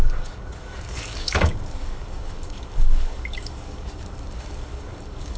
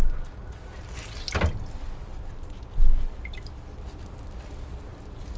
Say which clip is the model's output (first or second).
first